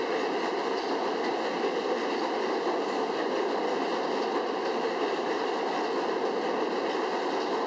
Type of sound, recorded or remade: recorded